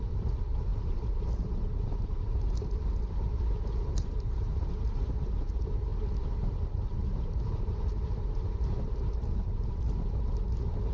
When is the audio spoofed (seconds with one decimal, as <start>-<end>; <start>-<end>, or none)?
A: 0.0-5.9; 6.6-10.9